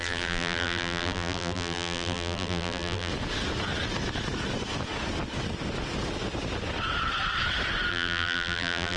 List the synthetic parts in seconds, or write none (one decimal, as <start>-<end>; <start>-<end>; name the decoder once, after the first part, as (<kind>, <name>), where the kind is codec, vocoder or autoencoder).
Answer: 0.0-3.1 (vocoder, BigVGAN v2); 7.9-9.0